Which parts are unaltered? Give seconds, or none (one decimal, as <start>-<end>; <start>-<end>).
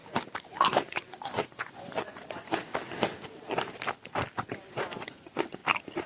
0.0-0.8; 2.7-4.5; 5.6-6.1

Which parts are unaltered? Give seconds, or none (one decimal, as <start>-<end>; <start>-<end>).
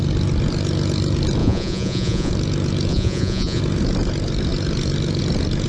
0.0-1.4; 2.3-2.9; 3.6-5.7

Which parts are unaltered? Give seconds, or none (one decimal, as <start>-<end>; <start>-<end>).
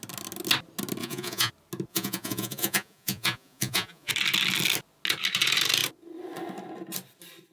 0.0-1.0; 1.5-1.9; 4.1-7.5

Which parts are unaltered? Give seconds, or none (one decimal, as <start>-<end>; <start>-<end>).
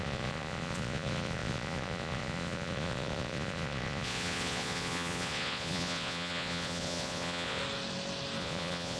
7.6-8.4